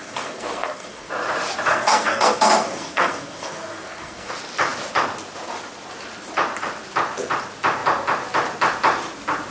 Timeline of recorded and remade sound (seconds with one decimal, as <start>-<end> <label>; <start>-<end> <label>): 0.0-1.1 remade; 1.1-1.7 recorded; 1.7-4.3 remade; 4.3-9.5 recorded